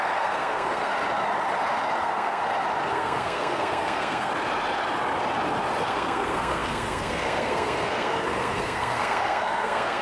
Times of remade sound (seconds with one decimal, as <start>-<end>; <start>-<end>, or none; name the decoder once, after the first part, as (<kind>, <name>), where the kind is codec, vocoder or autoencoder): 0.0-0.9 (codec, SNAC); 2.0-2.4; 2.9-4.3; 5.8-10.0